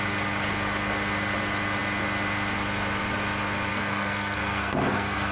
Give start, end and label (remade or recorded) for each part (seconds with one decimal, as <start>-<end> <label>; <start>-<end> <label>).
0.0-3.7 recorded; 3.7-5.3 remade